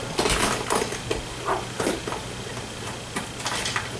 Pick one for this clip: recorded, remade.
recorded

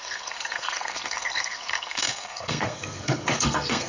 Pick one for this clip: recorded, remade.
remade